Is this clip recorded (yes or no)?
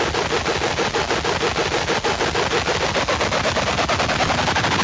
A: yes